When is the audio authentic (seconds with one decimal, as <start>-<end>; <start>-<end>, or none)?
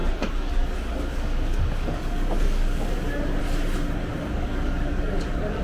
3.4-4.0